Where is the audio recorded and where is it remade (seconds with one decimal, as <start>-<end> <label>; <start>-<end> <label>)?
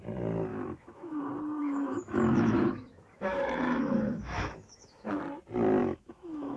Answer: 0.0-0.5 recorded; 0.5-1.2 remade; 1.2-1.6 recorded; 1.6-5.2 remade; 5.2-5.8 recorded; 5.8-6.6 remade